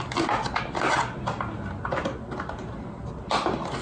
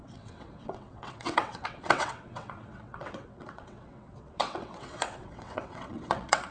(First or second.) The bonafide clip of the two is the first